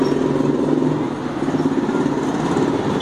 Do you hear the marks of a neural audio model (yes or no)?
no